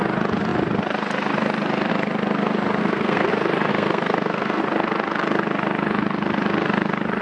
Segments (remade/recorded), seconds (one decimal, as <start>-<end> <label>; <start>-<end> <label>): 0.0-2.8 recorded; 2.8-3.3 remade; 3.3-3.7 recorded; 3.7-4.6 remade; 4.6-7.2 recorded